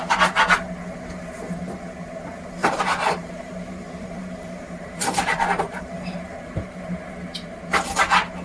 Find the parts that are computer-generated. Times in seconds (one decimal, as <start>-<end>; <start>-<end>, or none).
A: 2.6-7.6